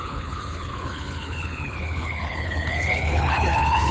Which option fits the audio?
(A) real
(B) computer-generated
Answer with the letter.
B